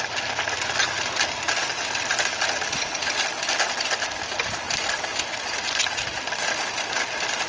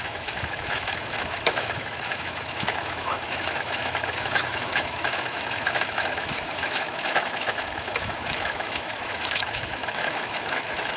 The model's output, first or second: second